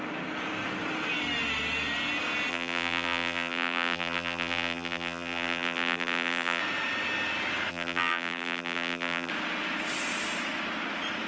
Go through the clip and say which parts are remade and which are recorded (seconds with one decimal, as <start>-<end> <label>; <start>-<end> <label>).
0.0-2.5 recorded; 2.5-6.6 remade; 6.6-7.7 recorded; 7.7-9.3 remade; 9.3-11.3 recorded